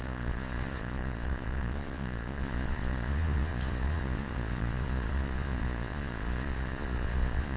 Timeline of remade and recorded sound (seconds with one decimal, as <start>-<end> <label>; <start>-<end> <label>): 0.0-7.6 remade